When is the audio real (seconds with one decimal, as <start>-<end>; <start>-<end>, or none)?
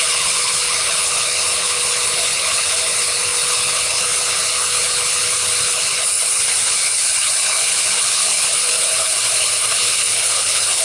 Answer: none